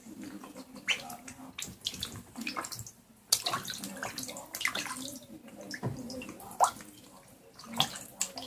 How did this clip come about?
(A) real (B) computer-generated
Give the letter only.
A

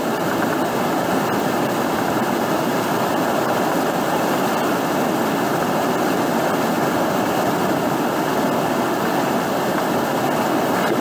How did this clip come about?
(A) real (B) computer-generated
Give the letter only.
A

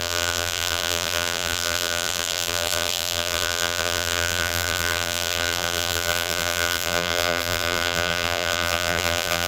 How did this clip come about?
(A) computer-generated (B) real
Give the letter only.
A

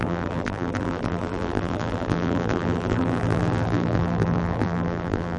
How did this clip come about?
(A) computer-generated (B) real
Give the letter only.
A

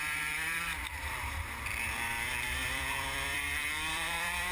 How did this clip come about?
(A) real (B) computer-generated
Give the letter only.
B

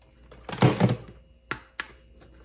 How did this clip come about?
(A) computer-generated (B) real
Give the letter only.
B